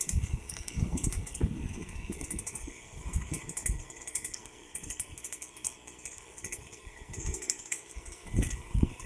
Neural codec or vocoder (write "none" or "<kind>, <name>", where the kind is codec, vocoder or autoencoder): codec, SNAC